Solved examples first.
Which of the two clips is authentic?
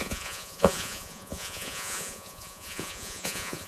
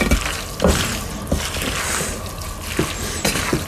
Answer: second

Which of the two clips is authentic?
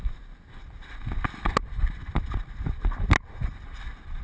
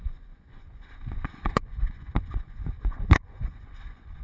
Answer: first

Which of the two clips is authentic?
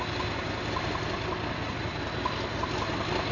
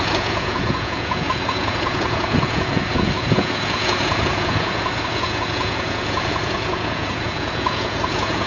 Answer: first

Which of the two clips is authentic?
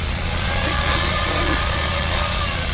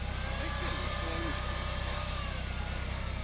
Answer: second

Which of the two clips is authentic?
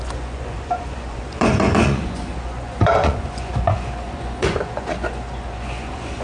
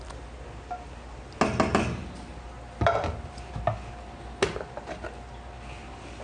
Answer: second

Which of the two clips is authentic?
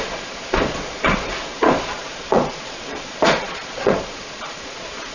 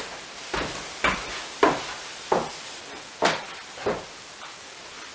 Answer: second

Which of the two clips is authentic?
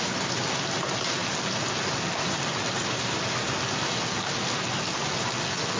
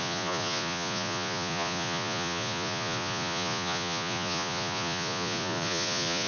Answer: first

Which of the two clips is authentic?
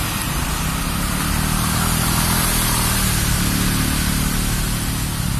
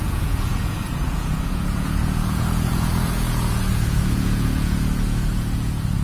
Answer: first